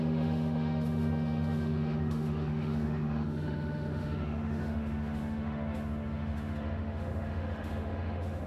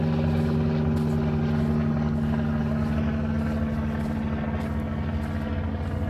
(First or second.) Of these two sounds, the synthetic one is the first